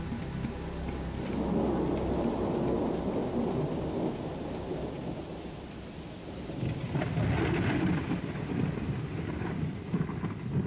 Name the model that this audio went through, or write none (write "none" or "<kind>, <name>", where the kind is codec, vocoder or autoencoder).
none